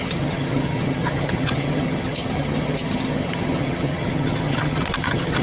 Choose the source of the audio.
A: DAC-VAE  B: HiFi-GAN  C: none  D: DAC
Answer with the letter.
B